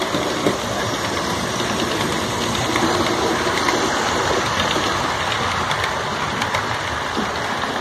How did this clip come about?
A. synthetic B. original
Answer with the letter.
B